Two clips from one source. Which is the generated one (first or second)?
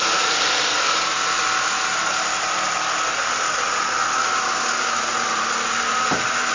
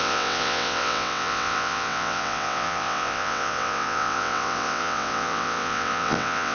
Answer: second